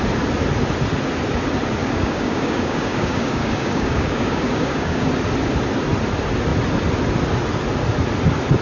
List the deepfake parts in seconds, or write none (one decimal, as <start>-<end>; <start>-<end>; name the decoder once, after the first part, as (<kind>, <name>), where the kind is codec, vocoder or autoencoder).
1.8-5.1 (codec, DAC)